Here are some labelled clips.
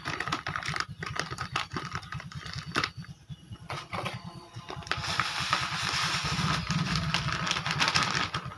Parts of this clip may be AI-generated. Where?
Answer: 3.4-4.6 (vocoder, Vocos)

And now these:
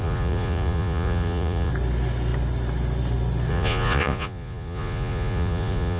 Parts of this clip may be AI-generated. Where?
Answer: 0.0-1.7 (vocoder, Vocos); 3.5-6.0

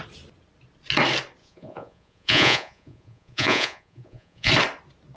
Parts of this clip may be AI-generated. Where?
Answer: 1.4-4.5 (vocoder, Vocos)

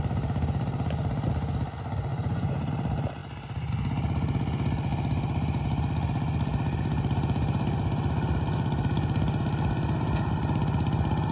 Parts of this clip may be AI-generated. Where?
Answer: 2.1-2.7 (vocoder, Vocos)

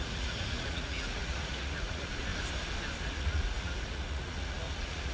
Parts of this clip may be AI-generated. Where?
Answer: 0.0-2.3 (vocoder, Vocos); 3.1-5.1